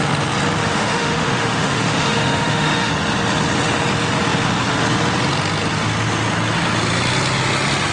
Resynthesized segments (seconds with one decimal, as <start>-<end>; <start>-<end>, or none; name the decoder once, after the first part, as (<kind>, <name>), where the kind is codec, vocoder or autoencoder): 0.6-2.9 (autoencoder, DAC-VAE)